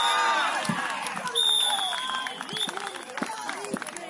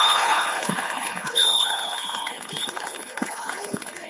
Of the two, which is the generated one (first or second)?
second